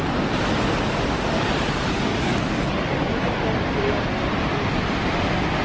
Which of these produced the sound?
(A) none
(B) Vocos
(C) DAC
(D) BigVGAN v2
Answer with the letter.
A